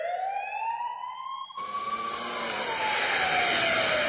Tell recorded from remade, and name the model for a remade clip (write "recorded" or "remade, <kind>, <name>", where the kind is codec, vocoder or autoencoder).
recorded